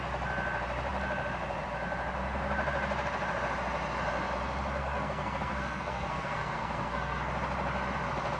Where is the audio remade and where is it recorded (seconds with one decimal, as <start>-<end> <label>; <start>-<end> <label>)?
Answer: 0.0-4.8 recorded; 4.8-7.3 remade; 7.3-8.4 recorded